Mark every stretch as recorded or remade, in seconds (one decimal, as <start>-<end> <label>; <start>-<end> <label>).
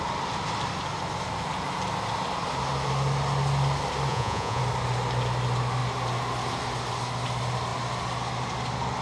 0.0-4.1 recorded; 4.1-4.6 remade; 4.6-9.0 recorded